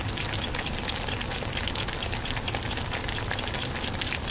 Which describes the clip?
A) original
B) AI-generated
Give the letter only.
A